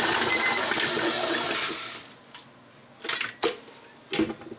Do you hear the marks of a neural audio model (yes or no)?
no